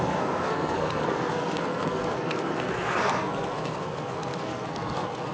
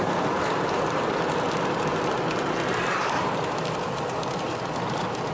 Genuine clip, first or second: second